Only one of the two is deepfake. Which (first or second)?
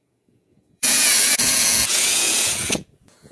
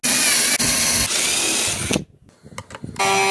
first